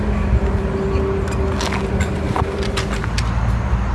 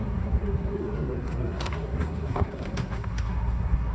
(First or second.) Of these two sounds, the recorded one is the first